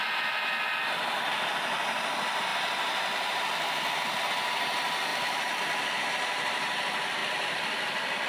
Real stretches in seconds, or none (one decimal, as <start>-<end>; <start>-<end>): 0.0-5.1; 6.0-7.2